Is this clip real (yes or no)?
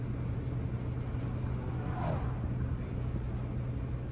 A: yes